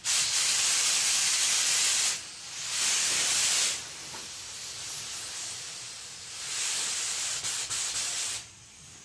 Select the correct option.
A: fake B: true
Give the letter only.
B